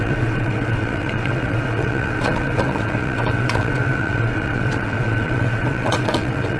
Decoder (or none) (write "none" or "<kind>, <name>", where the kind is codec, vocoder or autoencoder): vocoder, WaveNeXt